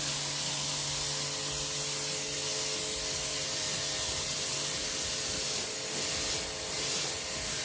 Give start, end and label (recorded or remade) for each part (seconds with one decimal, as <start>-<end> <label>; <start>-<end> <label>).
0.0-7.6 recorded